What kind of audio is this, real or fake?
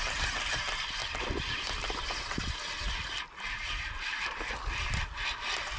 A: real